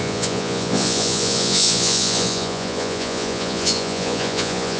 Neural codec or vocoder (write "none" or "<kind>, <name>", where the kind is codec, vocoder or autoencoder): vocoder, Vocos